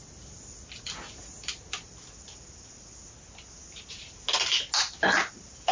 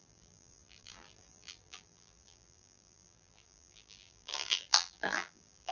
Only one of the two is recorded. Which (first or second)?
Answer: first